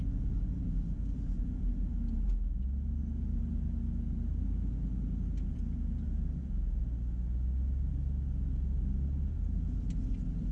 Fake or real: real